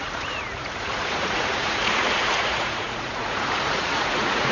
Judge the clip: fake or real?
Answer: fake